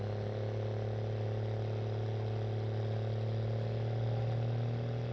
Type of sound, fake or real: real